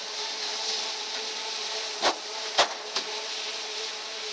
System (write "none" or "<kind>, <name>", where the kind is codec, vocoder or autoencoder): none